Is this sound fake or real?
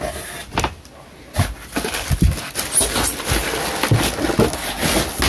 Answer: real